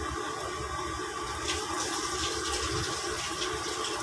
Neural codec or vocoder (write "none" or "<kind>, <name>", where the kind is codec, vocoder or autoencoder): none